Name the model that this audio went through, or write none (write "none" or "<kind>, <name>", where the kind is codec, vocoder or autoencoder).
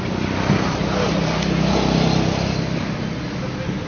none